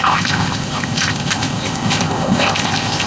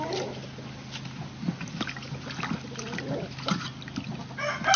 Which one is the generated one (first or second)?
first